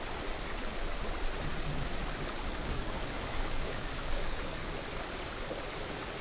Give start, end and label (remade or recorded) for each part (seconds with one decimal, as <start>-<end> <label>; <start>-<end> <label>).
0.0-1.5 recorded; 1.5-2.0 remade; 2.0-2.6 recorded; 2.6-4.7 remade; 4.7-6.2 recorded